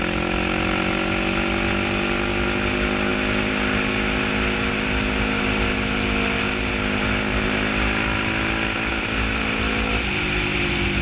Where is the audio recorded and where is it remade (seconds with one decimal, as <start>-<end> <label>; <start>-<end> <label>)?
0.0-11.0 recorded